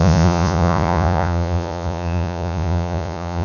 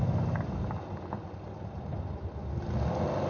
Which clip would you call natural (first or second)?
second